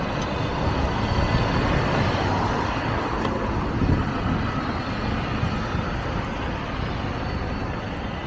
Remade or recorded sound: recorded